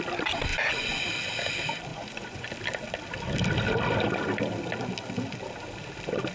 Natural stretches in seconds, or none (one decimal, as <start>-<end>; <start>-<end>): 0.0-0.5; 1.1-1.9; 2.5-6.3